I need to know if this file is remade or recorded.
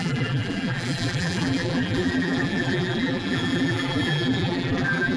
remade